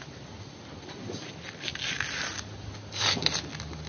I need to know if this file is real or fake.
real